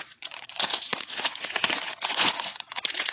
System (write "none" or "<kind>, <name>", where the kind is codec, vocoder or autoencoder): vocoder, Vocos